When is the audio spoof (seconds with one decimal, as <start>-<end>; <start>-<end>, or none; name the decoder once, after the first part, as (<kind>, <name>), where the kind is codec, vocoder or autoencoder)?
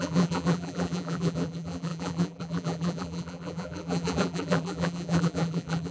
0.0-5.9 (vocoder, BigVGAN v2)